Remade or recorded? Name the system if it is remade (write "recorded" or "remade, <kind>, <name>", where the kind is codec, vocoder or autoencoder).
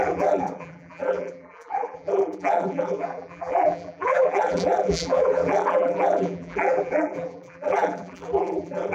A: remade, vocoder, BigVGAN v2